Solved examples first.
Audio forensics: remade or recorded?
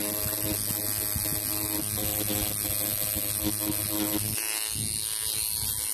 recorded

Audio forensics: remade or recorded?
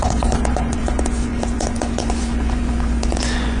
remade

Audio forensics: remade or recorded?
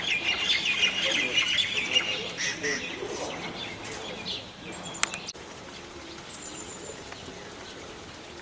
recorded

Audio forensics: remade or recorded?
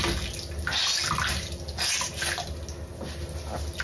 recorded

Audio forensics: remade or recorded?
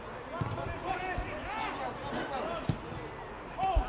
recorded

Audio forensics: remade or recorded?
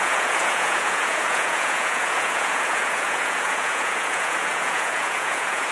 remade